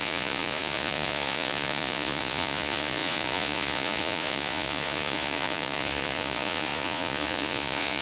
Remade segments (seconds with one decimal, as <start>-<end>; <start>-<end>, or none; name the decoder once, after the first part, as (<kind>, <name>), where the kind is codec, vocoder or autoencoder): 0.0-8.0 (vocoder, Vocos)